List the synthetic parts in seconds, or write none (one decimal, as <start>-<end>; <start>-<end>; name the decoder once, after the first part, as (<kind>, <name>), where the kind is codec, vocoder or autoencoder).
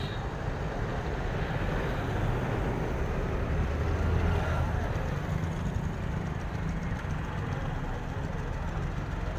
none